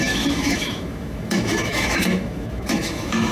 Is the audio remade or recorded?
remade